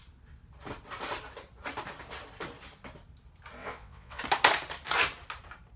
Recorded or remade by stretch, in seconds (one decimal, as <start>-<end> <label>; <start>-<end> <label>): 0.0-3.6 recorded; 3.6-4.2 remade; 4.2-5.8 recorded